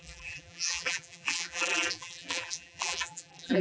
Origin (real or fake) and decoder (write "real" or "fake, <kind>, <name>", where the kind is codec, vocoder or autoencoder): fake, vocoder, BigVGAN v2